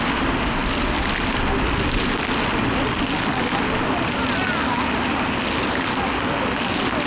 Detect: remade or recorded recorded